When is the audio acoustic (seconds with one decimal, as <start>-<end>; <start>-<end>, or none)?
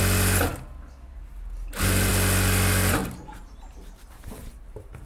0.0-3.0